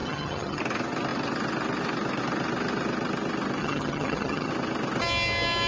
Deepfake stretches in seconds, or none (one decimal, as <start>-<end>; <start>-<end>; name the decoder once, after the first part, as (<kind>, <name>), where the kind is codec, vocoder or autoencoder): 0.0-0.6 (vocoder, HiFi-GAN); 3.6-4.5